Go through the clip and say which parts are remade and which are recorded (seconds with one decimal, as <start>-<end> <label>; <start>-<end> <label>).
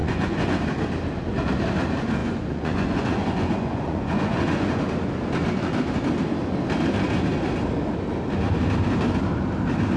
0.0-0.6 remade; 0.6-2.2 recorded; 2.2-4.8 remade; 4.8-10.0 recorded